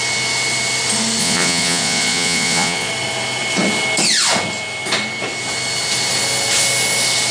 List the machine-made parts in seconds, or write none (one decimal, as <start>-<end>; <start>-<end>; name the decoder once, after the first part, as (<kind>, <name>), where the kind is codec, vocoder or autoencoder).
1.2-2.9 (vocoder, Vocos)